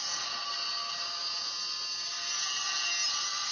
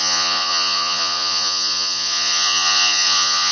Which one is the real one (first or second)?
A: first